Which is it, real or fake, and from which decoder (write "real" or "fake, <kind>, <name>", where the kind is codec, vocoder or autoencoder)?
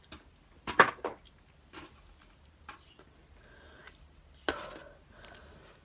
real